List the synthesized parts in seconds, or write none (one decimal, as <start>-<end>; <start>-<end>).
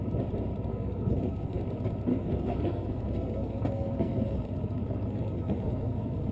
0.7-1.6; 2.1-6.3